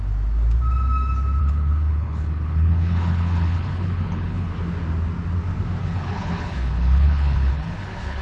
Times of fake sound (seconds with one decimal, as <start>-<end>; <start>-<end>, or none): 1.4-4.5; 5.8-8.2

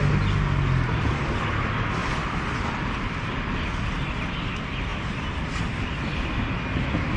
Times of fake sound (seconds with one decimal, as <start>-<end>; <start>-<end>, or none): none